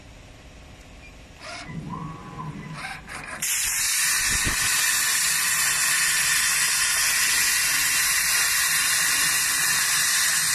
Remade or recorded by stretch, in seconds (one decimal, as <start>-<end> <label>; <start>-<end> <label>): 0.0-10.5 recorded